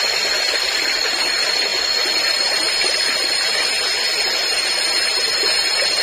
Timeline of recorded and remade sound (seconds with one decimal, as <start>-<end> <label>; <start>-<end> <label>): 0.0-6.0 recorded